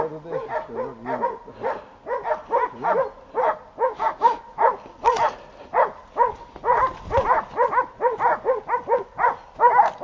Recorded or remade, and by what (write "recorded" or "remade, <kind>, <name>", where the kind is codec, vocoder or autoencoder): recorded